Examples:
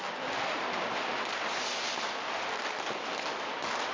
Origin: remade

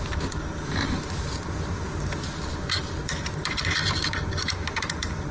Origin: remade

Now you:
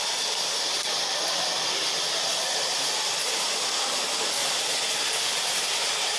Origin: recorded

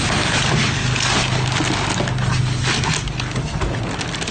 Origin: recorded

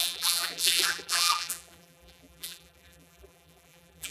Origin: remade